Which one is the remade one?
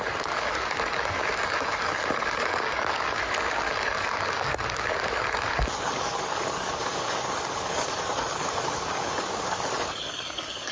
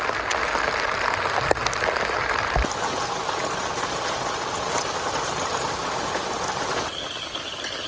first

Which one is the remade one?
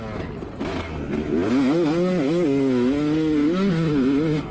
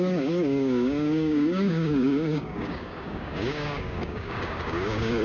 second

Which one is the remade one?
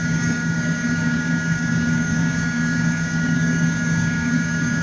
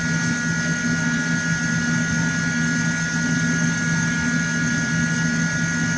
first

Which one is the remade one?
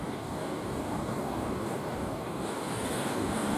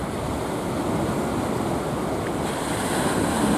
first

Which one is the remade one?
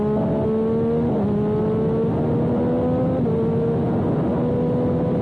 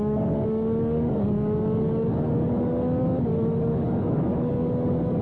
second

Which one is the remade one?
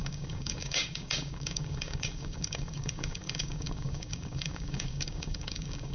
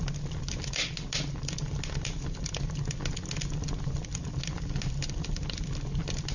first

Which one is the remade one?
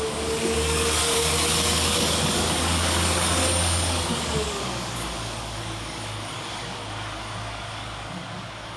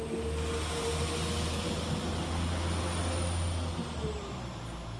first